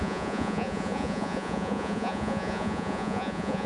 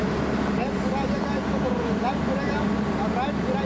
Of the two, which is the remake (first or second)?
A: first